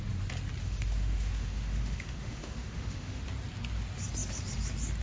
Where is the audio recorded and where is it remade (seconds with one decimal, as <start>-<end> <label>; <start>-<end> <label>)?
0.0-0.6 recorded; 0.6-3.2 remade; 3.2-5.0 recorded